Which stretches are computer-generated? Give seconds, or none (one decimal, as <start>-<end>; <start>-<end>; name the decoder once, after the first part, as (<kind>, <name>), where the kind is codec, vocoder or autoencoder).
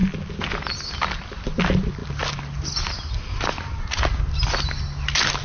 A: none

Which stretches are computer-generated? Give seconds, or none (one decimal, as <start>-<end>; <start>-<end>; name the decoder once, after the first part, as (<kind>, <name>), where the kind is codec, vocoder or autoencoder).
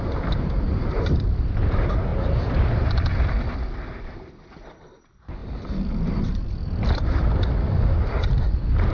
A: 0.0-8.9 (vocoder, BigVGAN v2)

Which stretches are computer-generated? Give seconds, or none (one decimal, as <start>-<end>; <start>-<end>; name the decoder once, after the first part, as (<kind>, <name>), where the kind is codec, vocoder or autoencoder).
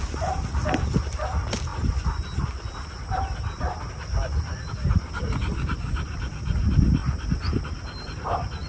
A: none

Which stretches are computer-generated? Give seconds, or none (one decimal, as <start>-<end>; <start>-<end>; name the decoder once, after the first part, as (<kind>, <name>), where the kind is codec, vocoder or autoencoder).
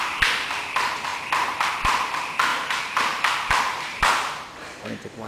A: 2.5-4.0 (vocoder, BigVGAN v2)